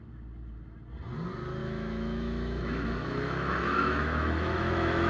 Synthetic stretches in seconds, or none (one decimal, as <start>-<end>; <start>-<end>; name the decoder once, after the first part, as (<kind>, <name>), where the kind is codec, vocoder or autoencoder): 1.6-5.1 (autoencoder, DAC-VAE)